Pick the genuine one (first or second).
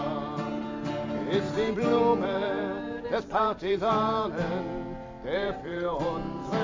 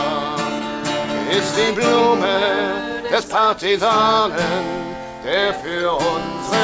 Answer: second